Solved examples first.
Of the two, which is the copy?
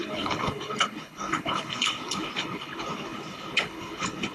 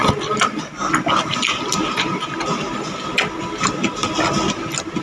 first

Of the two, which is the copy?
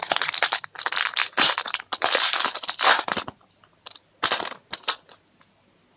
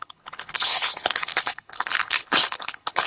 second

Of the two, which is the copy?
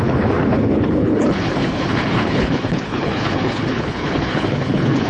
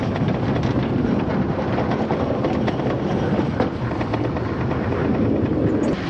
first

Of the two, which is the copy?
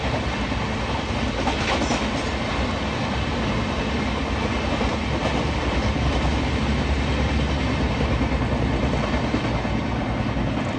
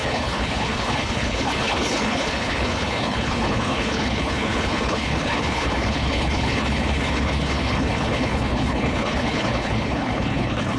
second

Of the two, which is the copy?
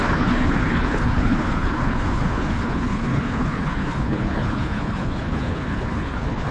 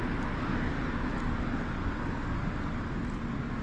first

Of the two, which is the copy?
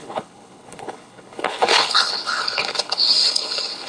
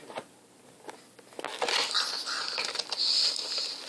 first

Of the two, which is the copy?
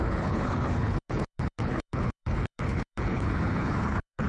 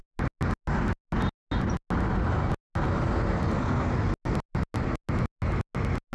first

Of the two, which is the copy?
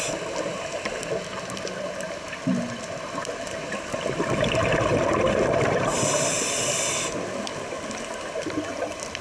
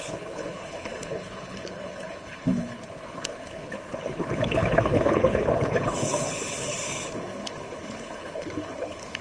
second